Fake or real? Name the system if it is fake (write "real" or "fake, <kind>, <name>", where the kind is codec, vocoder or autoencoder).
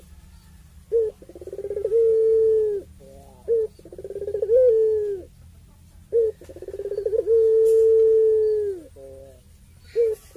real